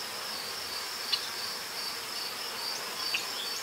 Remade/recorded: recorded